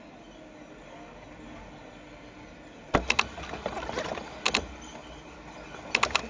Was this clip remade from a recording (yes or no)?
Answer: no